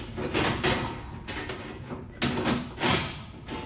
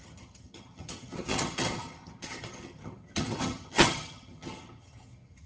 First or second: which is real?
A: first